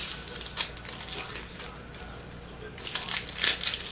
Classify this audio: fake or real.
real